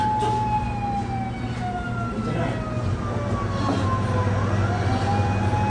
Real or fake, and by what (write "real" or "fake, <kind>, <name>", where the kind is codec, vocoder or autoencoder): real